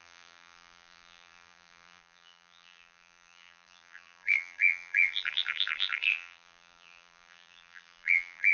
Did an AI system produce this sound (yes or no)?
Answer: yes